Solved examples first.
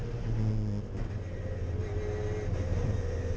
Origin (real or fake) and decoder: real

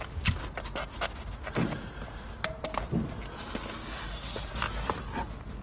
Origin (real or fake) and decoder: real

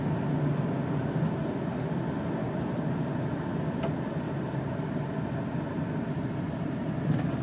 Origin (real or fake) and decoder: real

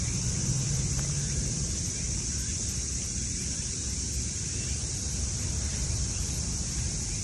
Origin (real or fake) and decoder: fake, vocoder, BigVGAN v2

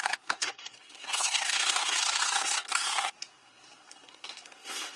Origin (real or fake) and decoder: fake, codec, SNAC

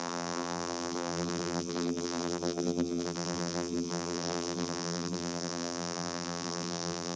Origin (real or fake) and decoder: fake, vocoder, BigVGAN v2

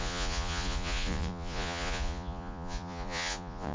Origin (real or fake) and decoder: fake, vocoder, Vocos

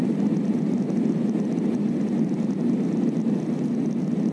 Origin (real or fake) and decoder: real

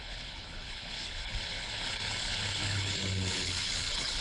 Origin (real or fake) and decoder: fake, codec, HILCodec